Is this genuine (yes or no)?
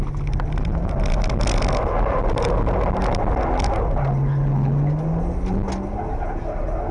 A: yes